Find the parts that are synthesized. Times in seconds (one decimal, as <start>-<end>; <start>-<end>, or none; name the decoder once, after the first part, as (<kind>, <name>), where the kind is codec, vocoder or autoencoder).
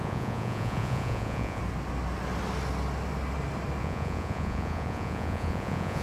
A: 0.0-1.6 (vocoder, Vocos); 3.8-6.0